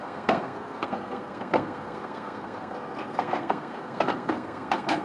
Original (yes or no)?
no